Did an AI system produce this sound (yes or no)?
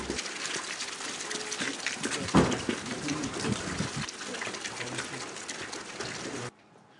no